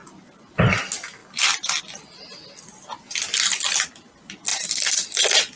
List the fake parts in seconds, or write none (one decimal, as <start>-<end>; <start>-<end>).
0.0-0.7; 4.5-5.6